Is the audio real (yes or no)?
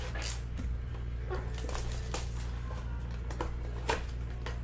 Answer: yes